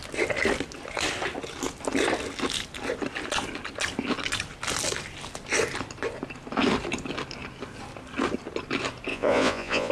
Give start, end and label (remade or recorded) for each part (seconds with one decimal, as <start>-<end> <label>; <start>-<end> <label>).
0.0-9.1 recorded; 9.1-9.9 remade